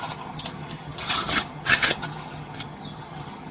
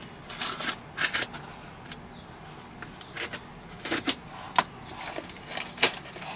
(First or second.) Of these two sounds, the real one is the second